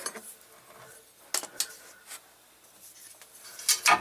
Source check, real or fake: real